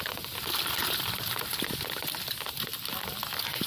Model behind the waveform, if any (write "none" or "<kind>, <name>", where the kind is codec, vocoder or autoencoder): none